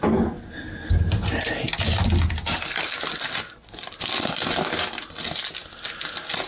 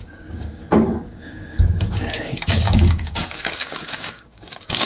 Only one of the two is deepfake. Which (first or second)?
second